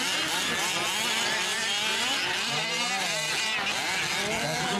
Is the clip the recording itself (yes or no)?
yes